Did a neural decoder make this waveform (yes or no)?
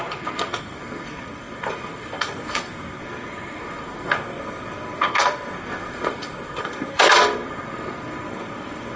yes